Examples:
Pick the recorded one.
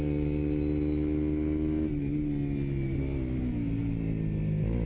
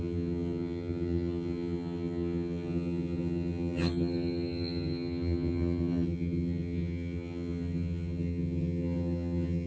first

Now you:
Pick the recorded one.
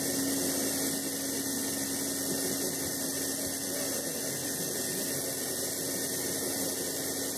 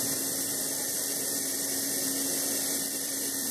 first